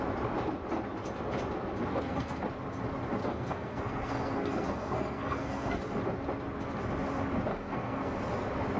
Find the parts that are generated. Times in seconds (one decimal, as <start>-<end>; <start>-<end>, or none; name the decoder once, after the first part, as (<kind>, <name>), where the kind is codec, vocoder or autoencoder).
1.9-2.4 (codec, SNAC); 3.2-5.8; 7.5-8.2